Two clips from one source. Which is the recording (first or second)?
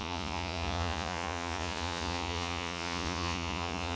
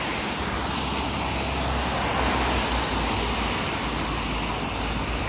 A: second